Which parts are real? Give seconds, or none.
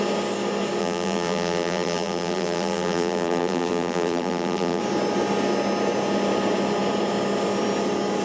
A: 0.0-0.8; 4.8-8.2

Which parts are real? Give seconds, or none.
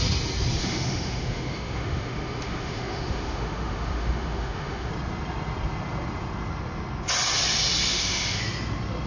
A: 0.0-0.6; 4.9-7.9; 8.4-9.1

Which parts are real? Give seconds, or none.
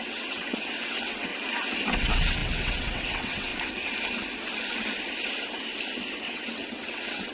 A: 1.3-1.9; 3.5-6.2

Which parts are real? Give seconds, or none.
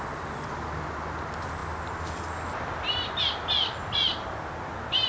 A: 0.0-5.1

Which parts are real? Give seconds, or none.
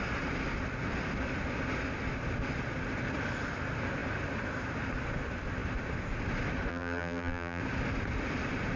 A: 0.0-6.7; 7.6-8.8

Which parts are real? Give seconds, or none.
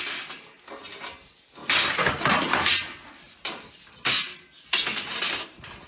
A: 0.0-5.9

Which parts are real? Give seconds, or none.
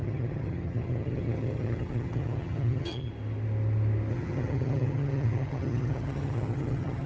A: 3.1-4.1